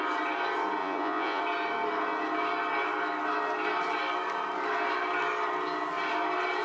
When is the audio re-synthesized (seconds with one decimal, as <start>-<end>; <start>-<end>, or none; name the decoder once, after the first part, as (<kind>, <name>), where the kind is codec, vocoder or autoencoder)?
0.8-1.4 (vocoder, Vocos)